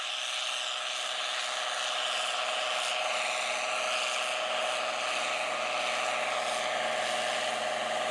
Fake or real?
real